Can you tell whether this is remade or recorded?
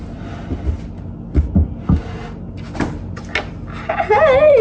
recorded